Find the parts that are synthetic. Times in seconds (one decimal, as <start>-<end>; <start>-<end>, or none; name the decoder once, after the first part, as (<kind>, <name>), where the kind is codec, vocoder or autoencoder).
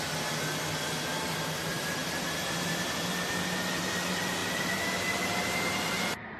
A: none